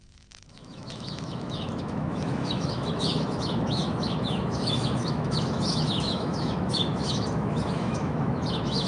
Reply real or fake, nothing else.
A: fake